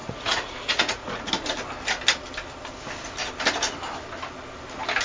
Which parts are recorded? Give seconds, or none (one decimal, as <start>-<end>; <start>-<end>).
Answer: 1.3-5.0